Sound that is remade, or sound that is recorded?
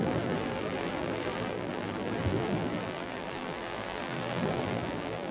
remade